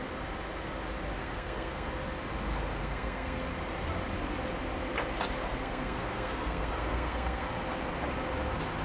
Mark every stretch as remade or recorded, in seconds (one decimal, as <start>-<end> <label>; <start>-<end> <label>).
0.0-1.2 recorded; 1.2-1.9 remade; 1.9-2.8 recorded; 2.8-3.4 remade; 3.4-5.5 recorded; 5.5-7.5 remade; 7.5-8.8 recorded